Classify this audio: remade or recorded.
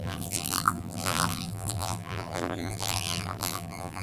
remade